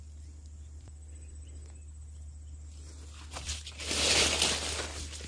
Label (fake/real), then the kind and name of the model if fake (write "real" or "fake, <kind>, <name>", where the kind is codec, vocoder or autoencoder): real